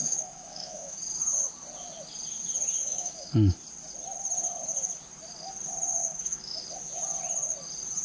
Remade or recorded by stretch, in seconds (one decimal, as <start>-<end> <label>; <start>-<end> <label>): 0.0-1.0 remade; 1.0-2.8 recorded; 2.8-3.3 remade; 3.3-6.0 recorded; 6.0-6.6 remade; 6.6-8.0 recorded